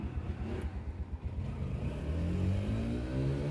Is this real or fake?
real